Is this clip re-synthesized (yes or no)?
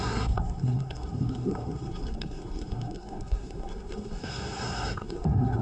yes